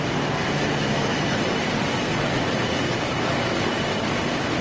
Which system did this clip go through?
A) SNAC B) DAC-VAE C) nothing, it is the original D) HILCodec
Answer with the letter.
C